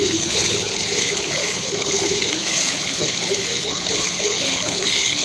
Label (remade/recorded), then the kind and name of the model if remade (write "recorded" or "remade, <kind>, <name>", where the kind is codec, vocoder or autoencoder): remade, codec, HILCodec